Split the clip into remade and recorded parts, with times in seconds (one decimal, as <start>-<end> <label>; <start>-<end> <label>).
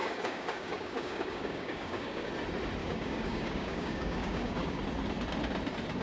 0.0-2.3 remade; 2.3-2.8 recorded; 2.8-4.8 remade; 4.8-6.0 recorded